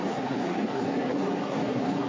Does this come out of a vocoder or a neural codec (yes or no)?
yes